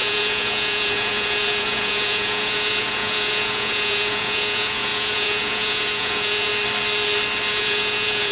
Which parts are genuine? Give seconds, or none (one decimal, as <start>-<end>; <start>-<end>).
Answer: 6.5-7.5